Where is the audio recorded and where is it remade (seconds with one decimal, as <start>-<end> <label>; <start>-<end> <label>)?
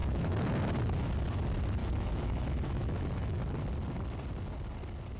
0.0-0.6 remade; 0.6-1.8 recorded; 1.8-3.4 remade; 3.4-5.2 recorded